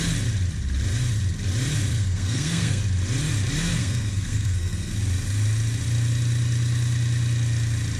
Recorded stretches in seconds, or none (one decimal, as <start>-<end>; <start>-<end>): 0.0-1.9; 2.8-3.8; 4.9-8.0